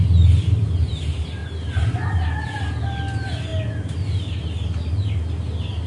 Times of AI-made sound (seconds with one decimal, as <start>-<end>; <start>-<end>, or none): none